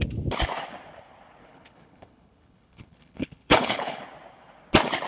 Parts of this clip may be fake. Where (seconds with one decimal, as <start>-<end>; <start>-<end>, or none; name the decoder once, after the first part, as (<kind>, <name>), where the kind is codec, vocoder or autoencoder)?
1.4-4.0 (codec, HILCodec)